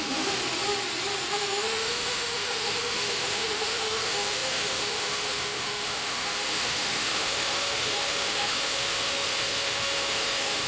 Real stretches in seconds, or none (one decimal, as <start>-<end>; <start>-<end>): 0.4-1.3